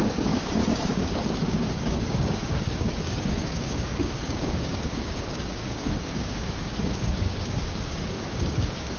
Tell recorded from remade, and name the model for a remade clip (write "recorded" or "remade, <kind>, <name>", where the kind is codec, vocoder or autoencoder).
remade, codec, DAC